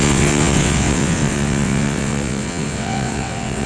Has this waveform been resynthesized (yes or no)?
yes